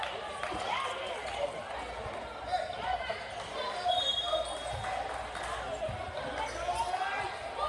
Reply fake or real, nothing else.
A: real